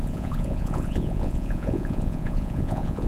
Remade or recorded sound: remade